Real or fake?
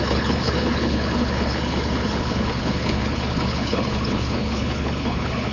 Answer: fake